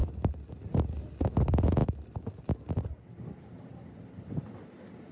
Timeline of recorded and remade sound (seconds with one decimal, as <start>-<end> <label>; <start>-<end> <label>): 0.0-5.1 recorded

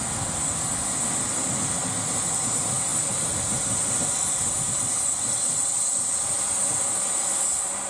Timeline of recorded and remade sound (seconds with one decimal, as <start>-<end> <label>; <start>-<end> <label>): 0.0-7.9 recorded